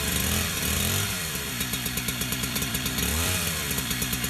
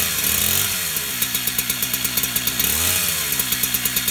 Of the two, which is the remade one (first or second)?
first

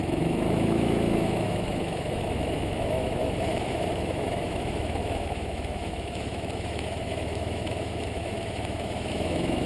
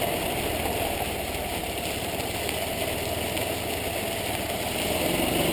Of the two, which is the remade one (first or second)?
first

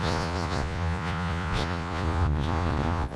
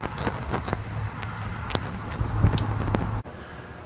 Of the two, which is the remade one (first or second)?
first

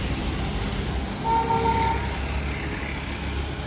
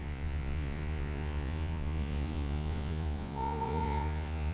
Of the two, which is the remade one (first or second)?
second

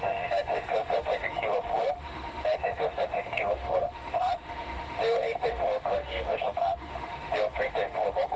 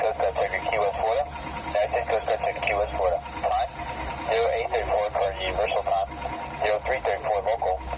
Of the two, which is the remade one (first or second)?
first